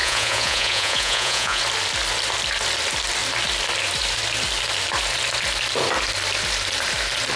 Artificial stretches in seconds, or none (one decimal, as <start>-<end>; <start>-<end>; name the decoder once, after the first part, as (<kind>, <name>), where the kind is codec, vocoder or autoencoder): 0.0-1.6 (vocoder, Vocos)